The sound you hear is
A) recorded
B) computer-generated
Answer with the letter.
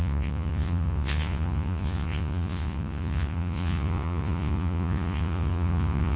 B